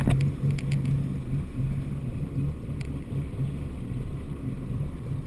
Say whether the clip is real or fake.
real